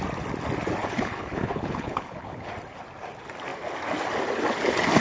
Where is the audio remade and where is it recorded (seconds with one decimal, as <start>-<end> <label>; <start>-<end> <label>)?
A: 0.0-0.8 recorded; 0.8-2.5 remade; 2.5-5.0 recorded